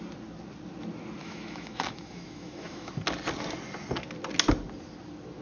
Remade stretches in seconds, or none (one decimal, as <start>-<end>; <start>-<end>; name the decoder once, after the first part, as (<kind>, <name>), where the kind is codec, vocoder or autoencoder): 1.2-2.9 (autoencoder, DAC-VAE)